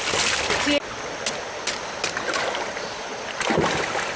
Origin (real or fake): real